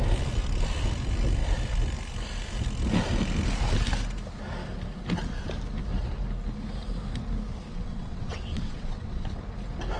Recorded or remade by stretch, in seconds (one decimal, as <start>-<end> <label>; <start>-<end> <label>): 0.0-7.7 recorded; 7.7-9.4 remade; 9.4-10.0 recorded